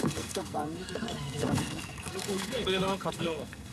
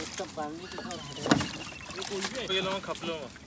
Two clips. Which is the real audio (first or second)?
second